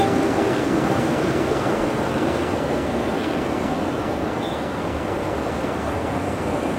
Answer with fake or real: fake